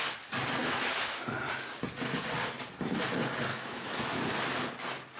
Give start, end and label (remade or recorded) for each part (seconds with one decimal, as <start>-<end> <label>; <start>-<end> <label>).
0.0-0.6 recorded; 0.6-1.2 remade; 1.2-3.5 recorded; 3.5-4.2 remade; 4.2-5.2 recorded